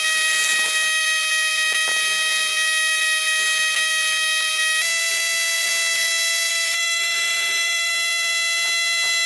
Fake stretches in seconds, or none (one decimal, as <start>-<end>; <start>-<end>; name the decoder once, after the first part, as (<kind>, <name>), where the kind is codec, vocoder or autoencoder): 6.5-7.9 (autoencoder, DAC-VAE)